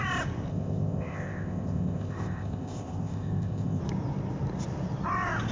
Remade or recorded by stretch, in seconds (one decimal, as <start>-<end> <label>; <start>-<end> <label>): 0.0-0.5 recorded; 0.5-3.8 remade; 3.8-5.5 recorded